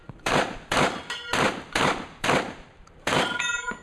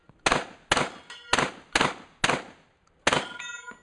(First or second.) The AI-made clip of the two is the first